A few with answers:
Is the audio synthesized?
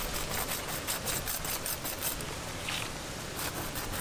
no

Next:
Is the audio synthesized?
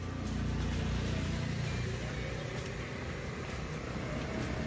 no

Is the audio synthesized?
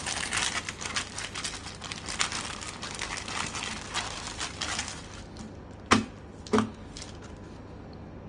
no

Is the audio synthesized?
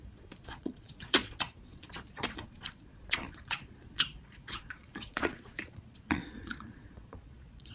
yes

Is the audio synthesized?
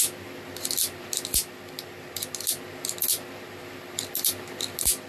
no